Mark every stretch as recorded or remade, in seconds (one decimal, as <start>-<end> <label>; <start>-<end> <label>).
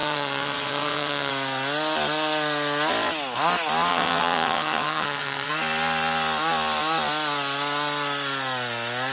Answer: 0.0-1.3 remade; 1.3-3.9 recorded; 3.9-5.5 remade; 5.5-9.1 recorded